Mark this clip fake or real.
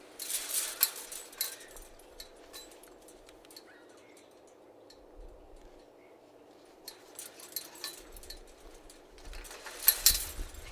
real